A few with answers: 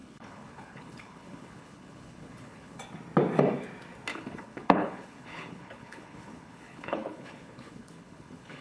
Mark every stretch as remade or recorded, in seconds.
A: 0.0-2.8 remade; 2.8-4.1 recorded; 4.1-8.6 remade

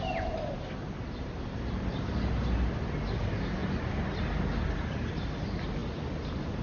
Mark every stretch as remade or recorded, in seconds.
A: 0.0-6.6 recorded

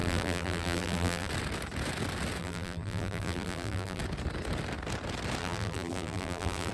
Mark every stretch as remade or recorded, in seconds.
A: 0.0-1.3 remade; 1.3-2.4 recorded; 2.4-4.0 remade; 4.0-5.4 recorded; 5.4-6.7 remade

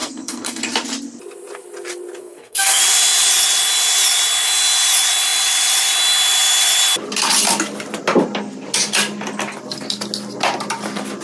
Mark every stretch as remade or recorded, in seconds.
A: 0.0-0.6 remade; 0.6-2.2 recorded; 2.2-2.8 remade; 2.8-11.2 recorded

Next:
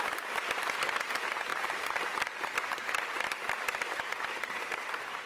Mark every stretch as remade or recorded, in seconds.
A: 0.0-5.3 remade

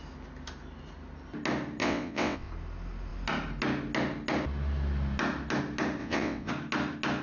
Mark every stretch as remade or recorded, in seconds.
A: 0.0-1.8 recorded; 1.8-2.5 remade; 2.5-6.0 recorded; 6.0-6.5 remade; 6.5-7.2 recorded